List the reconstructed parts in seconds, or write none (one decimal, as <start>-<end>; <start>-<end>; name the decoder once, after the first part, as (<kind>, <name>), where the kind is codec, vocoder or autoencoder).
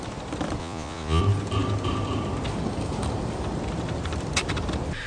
0.6-1.2 (vocoder, Vocos)